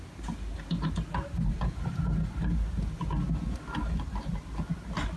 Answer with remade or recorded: recorded